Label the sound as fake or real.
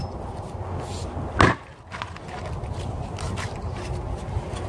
real